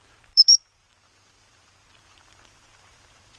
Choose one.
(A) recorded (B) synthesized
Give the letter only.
B